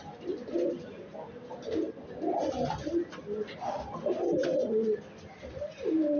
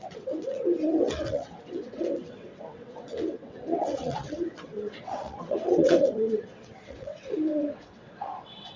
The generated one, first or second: second